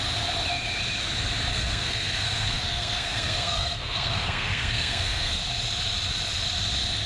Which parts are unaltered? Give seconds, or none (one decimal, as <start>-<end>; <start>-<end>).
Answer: 0.0-1.5; 5.4-7.1